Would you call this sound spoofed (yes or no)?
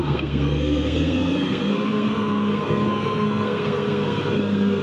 yes